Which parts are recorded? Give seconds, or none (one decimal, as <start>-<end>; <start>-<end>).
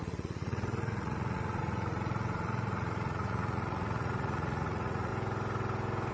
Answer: 5.1-6.1